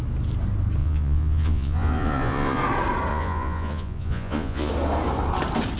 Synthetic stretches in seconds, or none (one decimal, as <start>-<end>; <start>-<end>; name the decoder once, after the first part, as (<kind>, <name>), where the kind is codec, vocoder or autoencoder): 0.8-2.6 (vocoder, Vocos); 3.1-4.7